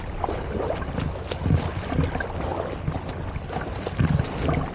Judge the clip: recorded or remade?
recorded